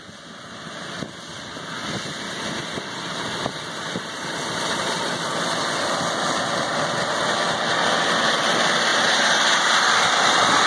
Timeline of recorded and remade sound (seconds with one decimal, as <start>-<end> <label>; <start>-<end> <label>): 0.0-1.8 recorded; 1.8-5.0 remade; 5.0-6.7 recorded; 6.7-7.2 remade; 7.2-8.9 recorded; 8.9-10.1 remade; 10.1-10.7 recorded